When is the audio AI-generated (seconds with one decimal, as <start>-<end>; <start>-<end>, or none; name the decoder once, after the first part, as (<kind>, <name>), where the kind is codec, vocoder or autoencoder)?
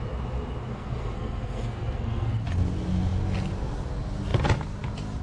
0.7-2.4 (codec, SNAC)